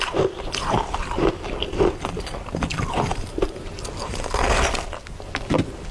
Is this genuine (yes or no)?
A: yes